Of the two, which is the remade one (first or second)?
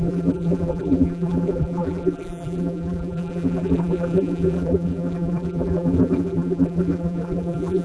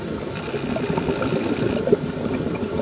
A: first